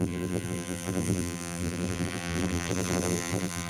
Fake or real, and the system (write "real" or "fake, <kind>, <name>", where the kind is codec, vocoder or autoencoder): fake, vocoder, BigVGAN v2